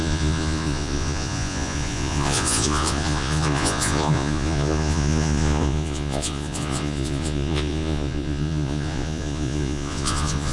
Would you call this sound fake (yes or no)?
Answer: yes